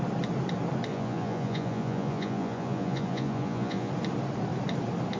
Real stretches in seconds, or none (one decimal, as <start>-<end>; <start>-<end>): 0.0-0.9; 3.9-5.2